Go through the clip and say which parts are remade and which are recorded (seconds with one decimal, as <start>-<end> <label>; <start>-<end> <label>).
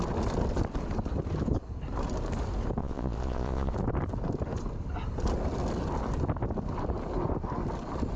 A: 0.0-2.8 recorded; 2.8-3.7 remade; 3.7-8.2 recorded